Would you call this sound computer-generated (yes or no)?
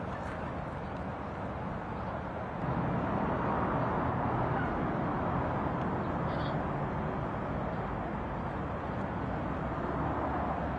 no